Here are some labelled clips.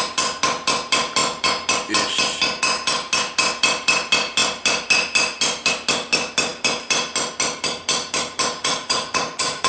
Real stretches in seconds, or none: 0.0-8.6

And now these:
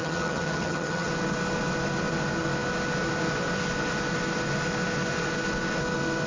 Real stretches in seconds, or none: 1.1-6.3

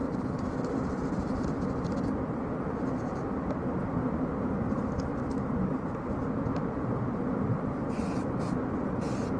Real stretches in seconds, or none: 0.0-9.4